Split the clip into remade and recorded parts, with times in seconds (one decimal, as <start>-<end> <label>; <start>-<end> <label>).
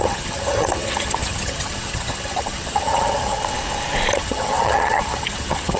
0.0-3.4 remade; 3.4-4.1 recorded; 4.1-5.8 remade